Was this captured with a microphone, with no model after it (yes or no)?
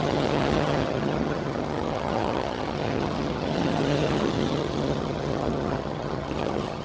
no